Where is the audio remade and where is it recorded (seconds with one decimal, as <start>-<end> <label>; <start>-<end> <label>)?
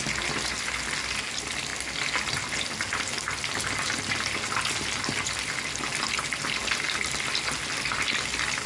0.0-8.7 recorded